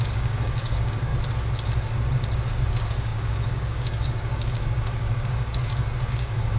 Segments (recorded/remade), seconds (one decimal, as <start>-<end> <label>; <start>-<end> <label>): 0.0-1.1 remade; 1.1-2.7 recorded; 2.7-6.6 remade

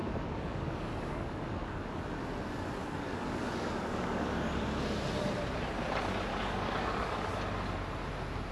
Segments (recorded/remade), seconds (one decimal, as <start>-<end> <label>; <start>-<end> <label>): 0.0-2.0 remade; 2.0-2.8 recorded; 2.8-4.6 remade; 4.6-6.3 recorded; 6.3-7.3 remade; 7.3-8.5 recorded

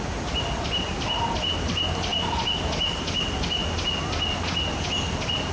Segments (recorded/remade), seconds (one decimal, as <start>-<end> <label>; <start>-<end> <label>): 0.0-5.5 recorded

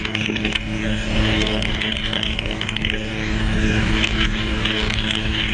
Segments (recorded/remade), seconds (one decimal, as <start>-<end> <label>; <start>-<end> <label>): 0.0-5.5 remade

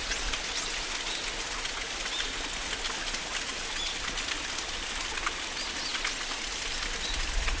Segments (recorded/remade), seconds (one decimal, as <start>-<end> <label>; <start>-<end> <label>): 0.0-7.6 recorded

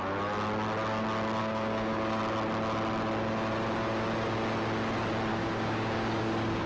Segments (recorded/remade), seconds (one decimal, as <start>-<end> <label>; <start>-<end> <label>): 0.0-1.4 recorded; 1.4-2.2 remade; 2.2-5.3 recorded; 5.3-6.7 remade

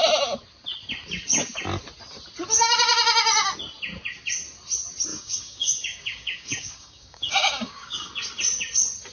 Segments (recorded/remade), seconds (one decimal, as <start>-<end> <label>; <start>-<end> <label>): 0.0-5.1 recorded; 5.1-8.1 remade; 8.1-9.1 recorded

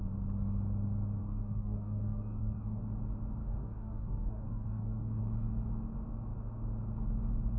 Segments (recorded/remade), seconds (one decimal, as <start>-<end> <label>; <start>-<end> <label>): 0.0-1.2 recorded; 1.2-2.8 remade; 2.8-3.4 recorded; 3.4-5.2 remade; 5.2-7.6 recorded